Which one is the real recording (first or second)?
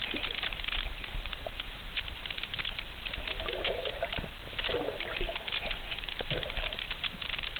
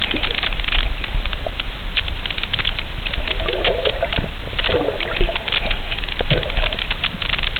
second